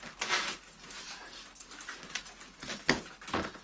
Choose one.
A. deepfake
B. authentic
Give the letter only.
B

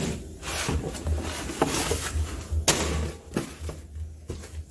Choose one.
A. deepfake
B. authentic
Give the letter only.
B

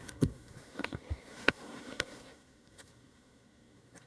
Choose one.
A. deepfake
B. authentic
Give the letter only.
A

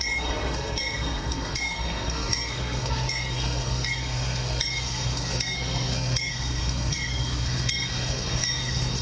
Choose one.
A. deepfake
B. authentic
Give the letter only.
A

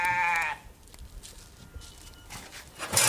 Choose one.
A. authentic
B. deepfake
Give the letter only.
A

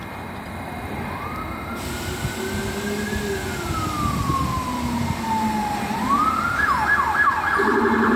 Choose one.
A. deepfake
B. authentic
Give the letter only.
B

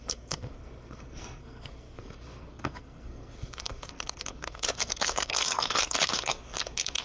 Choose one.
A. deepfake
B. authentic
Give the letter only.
A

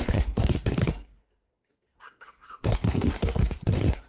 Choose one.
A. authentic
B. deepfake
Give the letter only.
B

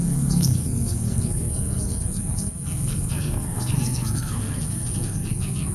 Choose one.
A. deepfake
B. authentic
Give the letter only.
A